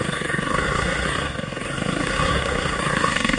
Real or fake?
fake